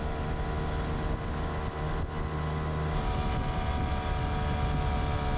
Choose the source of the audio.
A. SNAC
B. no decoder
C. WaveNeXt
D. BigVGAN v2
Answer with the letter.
B